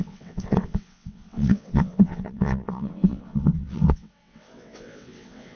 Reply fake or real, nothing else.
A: fake